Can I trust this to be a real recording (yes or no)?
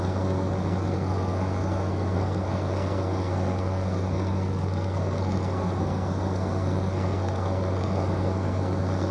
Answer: no